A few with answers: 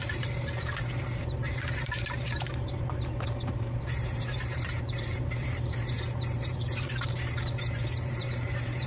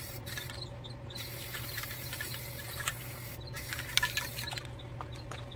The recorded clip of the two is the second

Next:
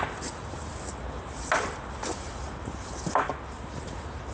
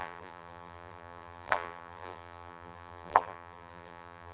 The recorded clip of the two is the first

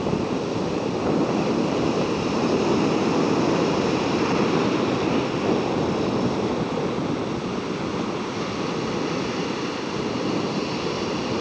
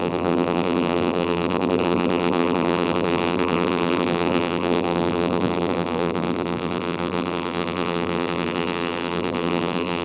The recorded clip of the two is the first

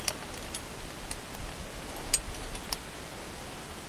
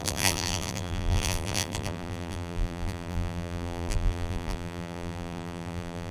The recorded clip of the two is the first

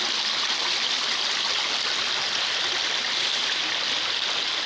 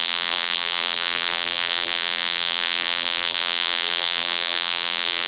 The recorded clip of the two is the first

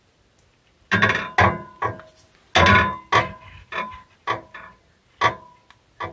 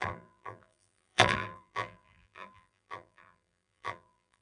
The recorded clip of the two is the first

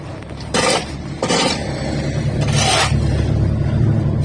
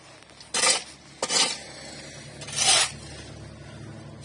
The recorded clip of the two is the second